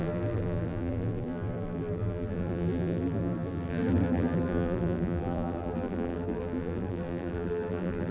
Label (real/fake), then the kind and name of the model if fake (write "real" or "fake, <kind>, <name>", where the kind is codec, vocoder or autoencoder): fake, vocoder, BigVGAN v2